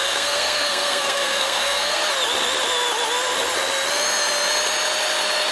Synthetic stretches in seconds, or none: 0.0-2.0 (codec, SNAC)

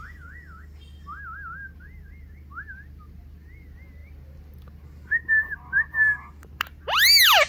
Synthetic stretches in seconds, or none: none

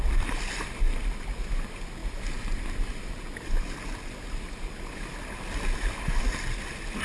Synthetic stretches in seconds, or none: none

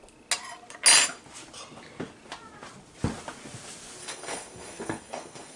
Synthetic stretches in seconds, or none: 4.0-5.6 (codec, SNAC)

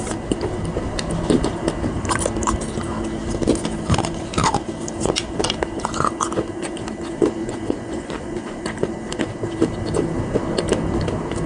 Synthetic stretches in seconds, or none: 7.4-8.6 (vocoder, Vocos)

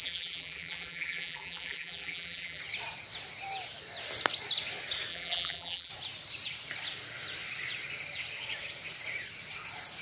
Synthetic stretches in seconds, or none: 0.0-2.6 (vocoder, BigVGAN v2); 5.1-5.9

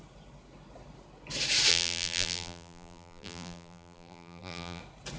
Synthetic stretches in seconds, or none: 1.7-4.8 (vocoder, BigVGAN v2)

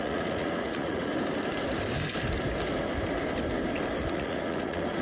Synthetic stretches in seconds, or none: 0.0-1.1 (vocoder, Vocos); 4.1-5.0